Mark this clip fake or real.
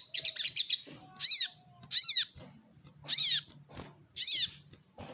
real